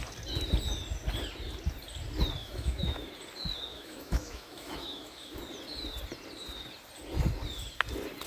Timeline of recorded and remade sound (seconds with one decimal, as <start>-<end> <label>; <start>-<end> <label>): 0.0-2.4 recorded; 2.4-3.1 remade; 3.1-3.7 recorded; 3.7-5.4 remade; 5.4-8.3 recorded